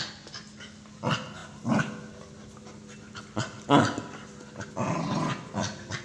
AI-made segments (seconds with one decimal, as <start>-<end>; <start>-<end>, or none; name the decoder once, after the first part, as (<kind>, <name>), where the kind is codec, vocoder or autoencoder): none